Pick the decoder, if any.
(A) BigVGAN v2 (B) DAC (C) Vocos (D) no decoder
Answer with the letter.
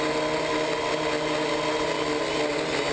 D